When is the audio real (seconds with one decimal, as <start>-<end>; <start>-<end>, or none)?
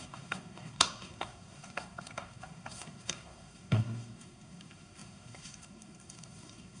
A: none